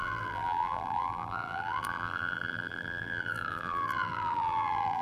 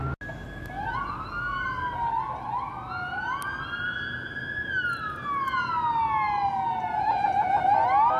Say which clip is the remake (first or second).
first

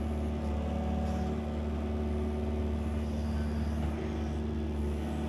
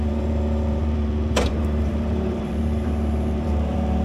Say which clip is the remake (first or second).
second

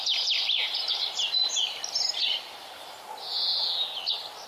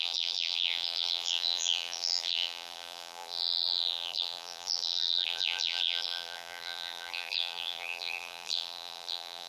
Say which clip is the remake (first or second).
second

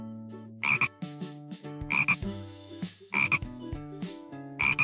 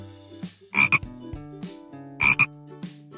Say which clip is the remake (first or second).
first